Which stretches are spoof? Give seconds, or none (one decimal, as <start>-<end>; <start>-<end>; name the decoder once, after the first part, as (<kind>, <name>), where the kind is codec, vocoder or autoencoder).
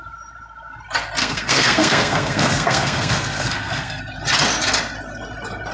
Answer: 1.2-4.0 (codec, SNAC)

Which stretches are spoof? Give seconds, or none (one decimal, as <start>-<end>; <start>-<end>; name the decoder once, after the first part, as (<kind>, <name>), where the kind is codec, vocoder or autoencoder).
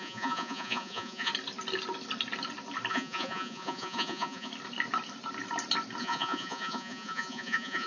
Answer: 0.0-1.3 (vocoder, Vocos); 2.9-4.5; 6.0-7.9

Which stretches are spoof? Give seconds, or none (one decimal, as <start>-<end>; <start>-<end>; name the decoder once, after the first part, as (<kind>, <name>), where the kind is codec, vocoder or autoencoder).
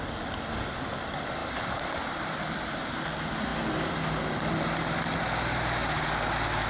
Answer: 1.4-2.8 (vocoder, BigVGAN v2); 3.5-5.2